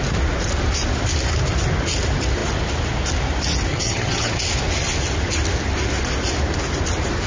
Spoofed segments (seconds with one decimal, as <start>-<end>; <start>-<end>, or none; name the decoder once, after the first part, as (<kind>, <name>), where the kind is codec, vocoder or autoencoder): 3.7-4.4 (vocoder, HiFi-GAN)